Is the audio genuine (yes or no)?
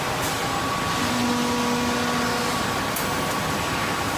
yes